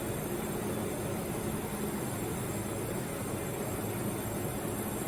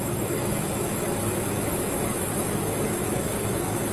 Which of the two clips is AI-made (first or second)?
second